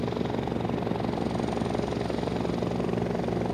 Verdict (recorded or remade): recorded